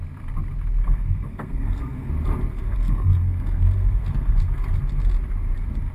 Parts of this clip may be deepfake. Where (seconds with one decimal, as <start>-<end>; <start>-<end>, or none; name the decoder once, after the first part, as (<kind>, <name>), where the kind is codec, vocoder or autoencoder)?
0.8-2.1 (codec, SNAC); 2.5-4.8